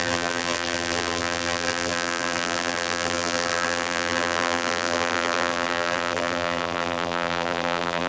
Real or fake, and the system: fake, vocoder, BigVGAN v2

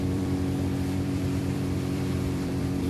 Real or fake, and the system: fake, vocoder, BigVGAN v2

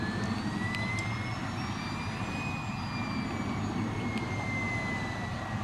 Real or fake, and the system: real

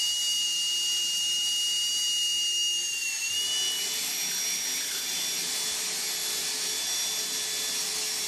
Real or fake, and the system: real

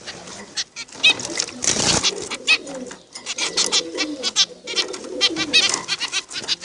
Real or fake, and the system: real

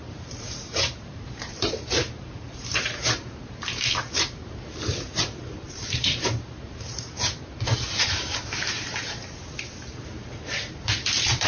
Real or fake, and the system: fake, vocoder, BigVGAN v2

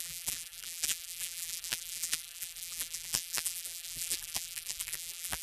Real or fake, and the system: fake, vocoder, BigVGAN v2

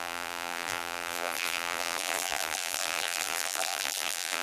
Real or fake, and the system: fake, vocoder, BigVGAN v2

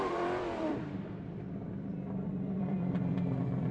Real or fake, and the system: fake, vocoder, BigVGAN v2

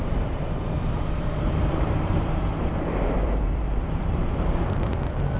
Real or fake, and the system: fake, vocoder, BigVGAN v2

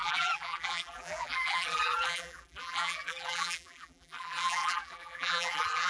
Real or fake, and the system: fake, vocoder, BigVGAN v2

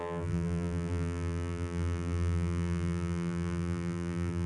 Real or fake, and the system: fake, vocoder, BigVGAN v2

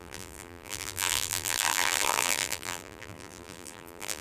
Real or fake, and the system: fake, vocoder, BigVGAN v2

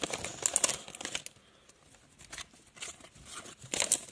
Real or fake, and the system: real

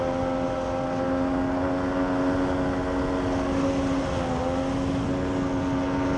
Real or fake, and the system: real